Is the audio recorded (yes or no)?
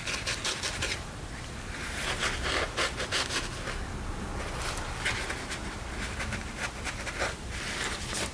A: yes